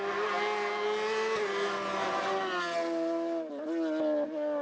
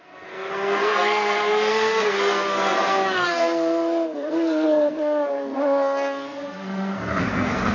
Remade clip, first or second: second